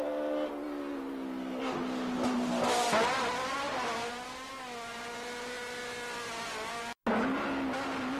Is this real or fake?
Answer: real